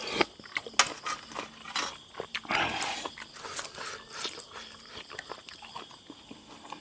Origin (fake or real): real